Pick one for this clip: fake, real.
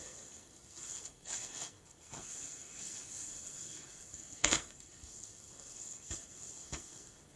fake